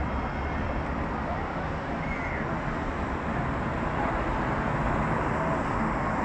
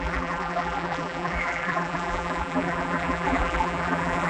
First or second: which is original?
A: first